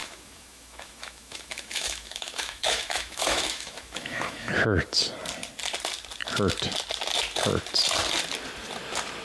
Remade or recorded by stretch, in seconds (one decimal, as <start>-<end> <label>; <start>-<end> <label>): 0.0-4.5 remade; 4.5-9.2 recorded

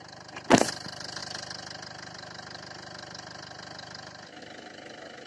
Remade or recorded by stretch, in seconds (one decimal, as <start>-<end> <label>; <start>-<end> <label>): 0.0-5.3 recorded

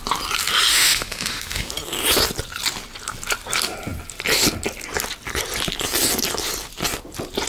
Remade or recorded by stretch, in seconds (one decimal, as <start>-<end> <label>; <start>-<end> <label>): 0.0-0.7 recorded; 0.7-1.7 remade; 1.7-7.5 recorded

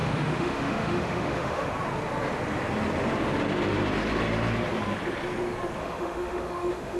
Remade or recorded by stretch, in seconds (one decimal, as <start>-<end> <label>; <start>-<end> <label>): 0.0-1.7 remade; 1.7-5.8 recorded; 5.8-7.0 remade

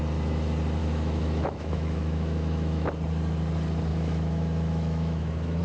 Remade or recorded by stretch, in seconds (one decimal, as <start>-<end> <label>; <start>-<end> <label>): 0.0-0.8 recorded; 0.8-2.9 remade; 2.9-3.9 recorded; 3.9-5.6 remade

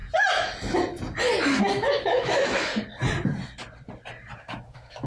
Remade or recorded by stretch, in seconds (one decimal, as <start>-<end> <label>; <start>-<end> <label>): 0.0-1.6 recorded; 1.6-2.7 remade; 2.7-4.4 recorded; 4.4-5.1 remade

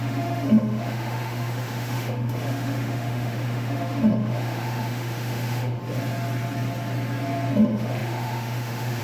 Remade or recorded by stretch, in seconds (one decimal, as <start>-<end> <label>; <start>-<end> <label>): 0.0-5.8 remade; 5.8-7.6 recorded; 7.6-9.0 remade